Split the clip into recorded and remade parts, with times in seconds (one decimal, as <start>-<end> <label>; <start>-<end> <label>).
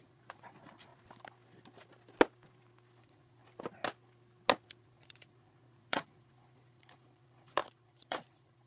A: 0.0-0.9 remade; 0.9-3.0 recorded; 3.0-3.4 remade; 3.4-4.8 recorded; 4.8-8.7 remade